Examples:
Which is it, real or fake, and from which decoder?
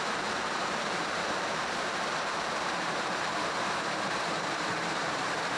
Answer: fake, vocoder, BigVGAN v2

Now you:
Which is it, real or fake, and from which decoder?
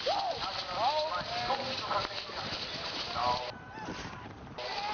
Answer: real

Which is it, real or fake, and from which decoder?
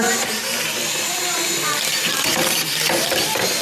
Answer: real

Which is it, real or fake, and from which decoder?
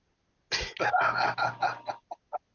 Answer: real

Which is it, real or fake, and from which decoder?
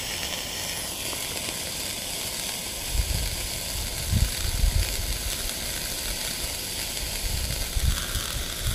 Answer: real